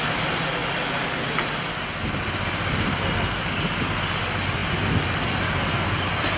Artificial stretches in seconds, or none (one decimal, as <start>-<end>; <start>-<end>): none